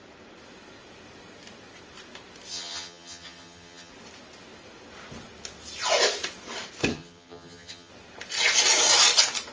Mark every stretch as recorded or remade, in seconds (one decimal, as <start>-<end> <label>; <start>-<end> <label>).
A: 0.0-2.5 recorded; 2.5-3.9 remade; 3.9-6.9 recorded; 6.9-7.9 remade; 7.9-9.5 recorded